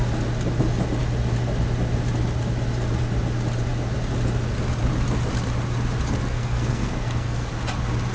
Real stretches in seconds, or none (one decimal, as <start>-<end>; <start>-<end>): 0.0-6.3; 7.5-8.1